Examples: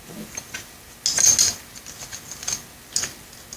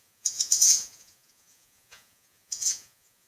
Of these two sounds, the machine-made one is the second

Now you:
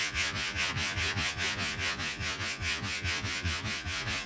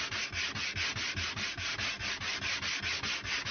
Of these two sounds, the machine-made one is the first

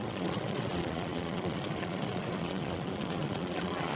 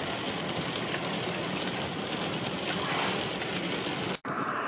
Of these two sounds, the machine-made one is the first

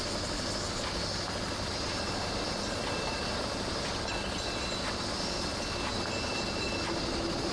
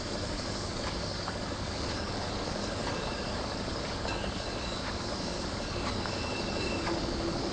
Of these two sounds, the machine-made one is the second